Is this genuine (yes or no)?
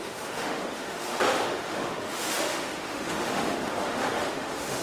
no